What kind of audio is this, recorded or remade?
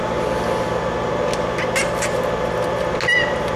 recorded